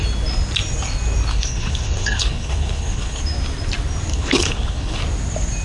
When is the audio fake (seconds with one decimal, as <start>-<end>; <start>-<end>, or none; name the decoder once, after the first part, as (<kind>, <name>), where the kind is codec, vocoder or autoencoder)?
1.3-3.2 (codec, HILCodec); 4.1-5.0